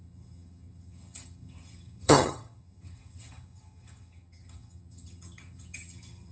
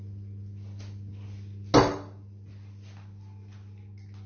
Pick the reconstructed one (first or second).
first